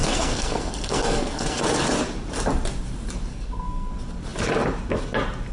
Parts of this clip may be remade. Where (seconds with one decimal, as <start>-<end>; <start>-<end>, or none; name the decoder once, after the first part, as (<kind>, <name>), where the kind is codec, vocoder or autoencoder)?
0.0-1.6 (codec, SNAC); 3.3-3.9